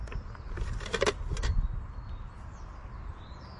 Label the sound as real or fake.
real